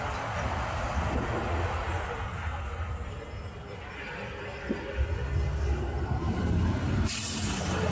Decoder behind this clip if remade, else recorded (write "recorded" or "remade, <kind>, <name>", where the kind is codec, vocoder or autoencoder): recorded